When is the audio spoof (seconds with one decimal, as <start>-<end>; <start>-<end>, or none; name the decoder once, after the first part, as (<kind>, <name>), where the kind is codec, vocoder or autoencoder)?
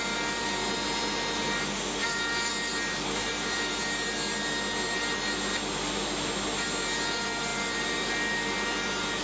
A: 2.0-2.5 (vocoder, BigVGAN v2); 3.2-3.8